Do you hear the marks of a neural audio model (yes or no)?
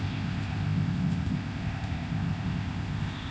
yes